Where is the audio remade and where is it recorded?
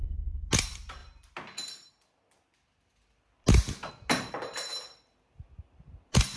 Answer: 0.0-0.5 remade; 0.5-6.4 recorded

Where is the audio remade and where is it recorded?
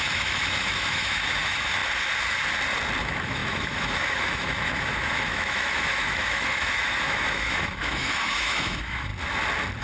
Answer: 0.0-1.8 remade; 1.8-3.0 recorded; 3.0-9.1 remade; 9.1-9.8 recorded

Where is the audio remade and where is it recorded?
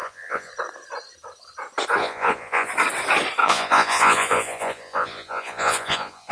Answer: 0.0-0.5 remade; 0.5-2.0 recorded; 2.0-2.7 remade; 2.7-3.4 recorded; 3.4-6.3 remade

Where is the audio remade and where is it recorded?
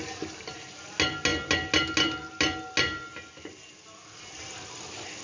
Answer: 0.0-5.2 recorded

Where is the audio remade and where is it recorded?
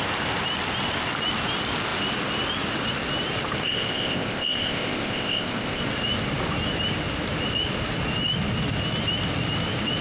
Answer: 0.0-3.6 recorded; 3.6-5.8 remade; 5.8-10.0 recorded